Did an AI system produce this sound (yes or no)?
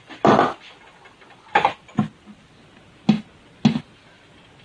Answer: no